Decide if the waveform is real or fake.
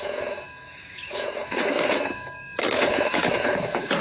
fake